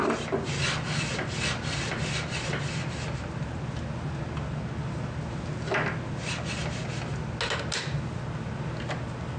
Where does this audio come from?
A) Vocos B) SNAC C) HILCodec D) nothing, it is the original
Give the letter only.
D